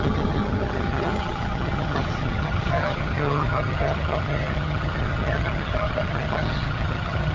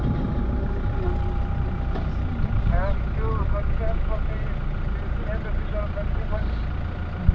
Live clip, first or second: second